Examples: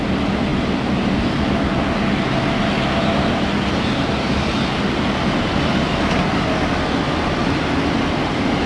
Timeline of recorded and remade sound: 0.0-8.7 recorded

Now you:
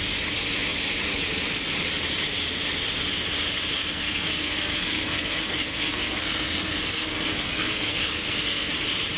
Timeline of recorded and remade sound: 0.0-3.8 recorded; 3.8-8.7 remade; 8.7-9.2 recorded

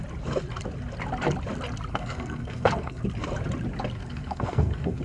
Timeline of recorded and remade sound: 0.0-1.9 recorded; 1.9-3.0 remade; 3.0-4.0 recorded; 4.0-5.0 remade

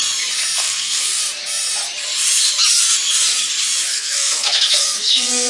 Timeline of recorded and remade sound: 0.0-0.6 recorded; 0.6-1.2 remade; 1.2-3.9 recorded; 3.9-5.5 remade

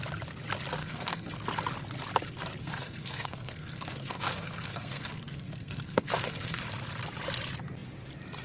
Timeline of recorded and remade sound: 0.0-0.8 recorded; 0.8-1.3 remade; 1.3-2.6 recorded; 2.6-6.6 remade; 6.6-8.4 recorded

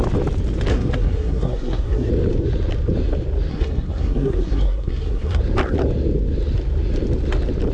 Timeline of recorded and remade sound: 0.0-0.7 recorded; 0.7-2.1 remade; 2.1-3.5 recorded; 3.5-5.4 remade; 5.4-7.7 recorded

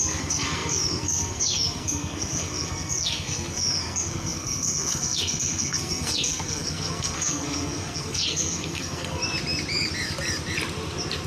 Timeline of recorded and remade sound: 0.0-9.2 remade; 9.2-11.3 recorded